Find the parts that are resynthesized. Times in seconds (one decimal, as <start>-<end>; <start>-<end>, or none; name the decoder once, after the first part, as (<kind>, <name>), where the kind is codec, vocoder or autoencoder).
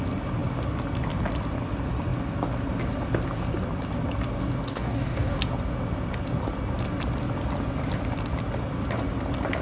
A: 4.7-5.4 (codec, DAC)